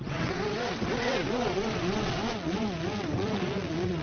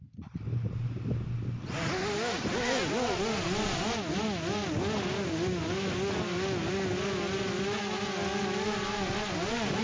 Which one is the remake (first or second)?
first